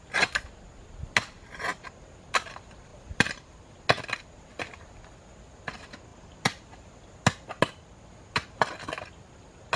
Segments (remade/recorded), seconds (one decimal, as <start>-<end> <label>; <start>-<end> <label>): 0.0-2.9 recorded; 2.9-3.8 remade; 3.8-6.1 recorded; 6.1-7.2 remade; 7.2-9.8 recorded

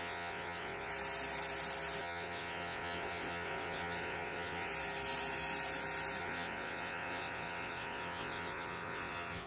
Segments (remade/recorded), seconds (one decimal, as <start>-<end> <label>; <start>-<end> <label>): 0.0-0.9 remade; 0.9-2.0 recorded; 2.0-4.7 remade; 4.7-6.2 recorded; 6.2-9.5 remade

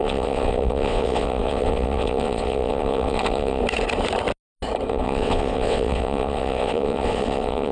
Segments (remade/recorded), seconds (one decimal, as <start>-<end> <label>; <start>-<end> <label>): 0.0-3.6 remade; 3.6-4.9 recorded; 4.9-7.7 remade

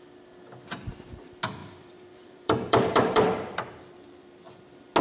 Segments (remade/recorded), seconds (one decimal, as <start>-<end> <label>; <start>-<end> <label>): 0.0-1.6 recorded; 1.6-4.6 remade; 4.6-5.0 recorded

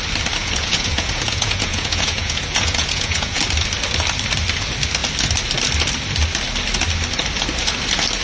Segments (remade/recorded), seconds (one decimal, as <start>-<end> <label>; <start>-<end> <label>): 0.0-0.4 recorded; 0.4-3.4 remade; 3.4-8.2 recorded

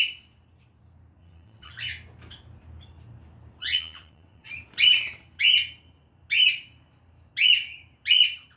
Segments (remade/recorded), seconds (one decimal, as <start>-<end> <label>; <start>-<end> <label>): 0.0-1.2 recorded; 1.2-1.7 remade; 1.7-3.6 recorded; 3.6-4.5 remade; 4.5-8.6 recorded

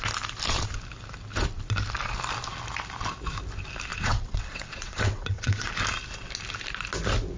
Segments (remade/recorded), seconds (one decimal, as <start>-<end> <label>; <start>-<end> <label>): 0.0-3.9 recorded; 3.9-5.7 remade; 5.7-7.4 recorded

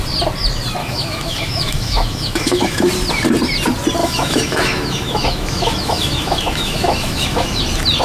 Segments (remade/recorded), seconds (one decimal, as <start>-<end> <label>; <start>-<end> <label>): 0.0-0.8 recorded; 0.8-2.9 remade; 2.9-4.0 recorded; 4.0-7.6 remade; 7.6-8.0 recorded